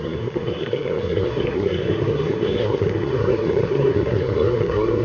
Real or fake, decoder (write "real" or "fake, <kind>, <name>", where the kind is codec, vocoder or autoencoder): fake, codec, SNAC